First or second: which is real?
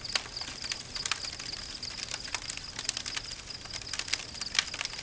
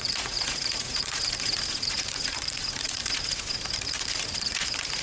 first